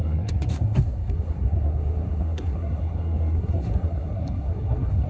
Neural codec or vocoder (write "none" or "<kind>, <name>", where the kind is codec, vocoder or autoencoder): codec, SNAC